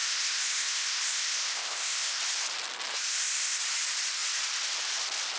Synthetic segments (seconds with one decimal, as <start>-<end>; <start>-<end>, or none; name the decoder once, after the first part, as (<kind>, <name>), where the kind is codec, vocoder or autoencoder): 0.0-2.2 (codec, ZipCodec); 2.9-3.6